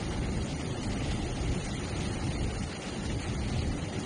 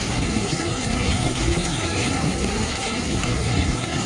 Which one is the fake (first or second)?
second